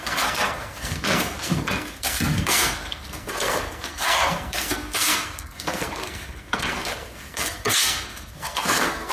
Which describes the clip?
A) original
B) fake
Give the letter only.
B